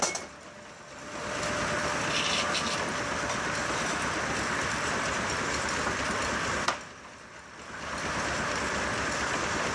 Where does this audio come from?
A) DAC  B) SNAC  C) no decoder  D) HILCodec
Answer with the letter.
C